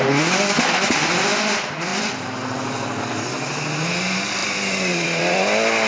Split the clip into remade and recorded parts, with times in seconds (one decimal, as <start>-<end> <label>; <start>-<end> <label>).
0.0-5.9 recorded